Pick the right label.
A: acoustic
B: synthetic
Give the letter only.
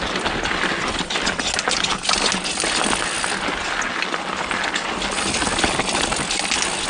A